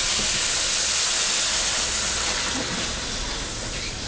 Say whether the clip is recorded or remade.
recorded